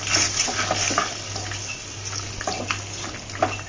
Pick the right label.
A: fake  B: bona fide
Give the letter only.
B